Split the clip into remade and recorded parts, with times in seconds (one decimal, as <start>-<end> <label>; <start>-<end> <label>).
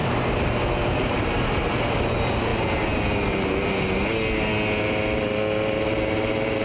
0.0-1.4 remade; 1.4-6.6 recorded